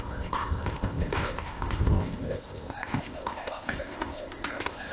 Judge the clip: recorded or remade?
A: remade